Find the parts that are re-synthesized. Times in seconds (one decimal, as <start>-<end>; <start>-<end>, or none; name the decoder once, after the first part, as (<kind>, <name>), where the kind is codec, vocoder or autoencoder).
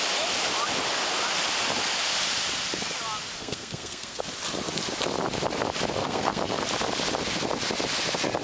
3.4-4.2 (codec, SNAC); 6.0-6.6